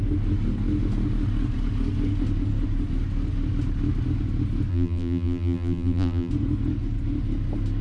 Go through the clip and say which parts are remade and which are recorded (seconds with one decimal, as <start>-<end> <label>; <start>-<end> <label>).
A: 0.0-4.7 recorded; 4.7-6.3 remade; 6.3-7.8 recorded